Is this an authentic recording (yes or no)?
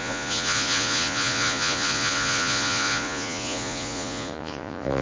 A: no